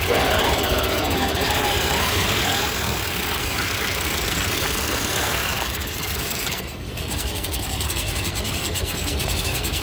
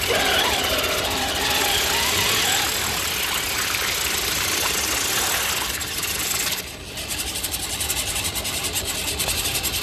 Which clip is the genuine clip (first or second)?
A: second